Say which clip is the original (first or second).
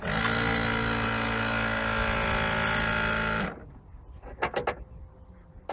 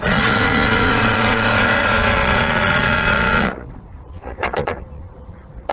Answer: first